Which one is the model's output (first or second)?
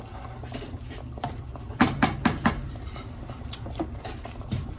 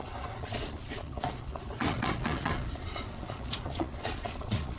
second